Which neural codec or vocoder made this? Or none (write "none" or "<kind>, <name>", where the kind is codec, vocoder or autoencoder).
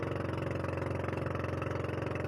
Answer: none